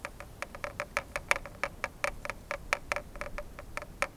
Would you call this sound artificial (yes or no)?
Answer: no